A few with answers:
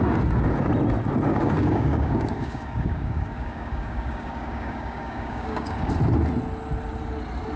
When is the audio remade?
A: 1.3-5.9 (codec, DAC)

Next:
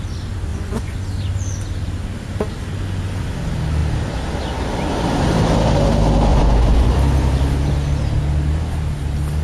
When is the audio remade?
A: 0.5-1.0 (vocoder, Vocos); 6.3-6.9

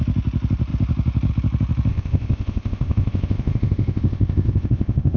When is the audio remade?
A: 1.9-5.2 (codec, ZipCodec)

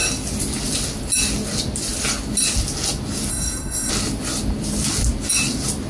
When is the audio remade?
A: 3.3-3.9 (codec, SNAC)